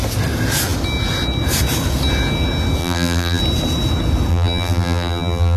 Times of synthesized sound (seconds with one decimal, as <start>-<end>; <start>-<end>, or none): 2.8-3.4; 4.3-5.6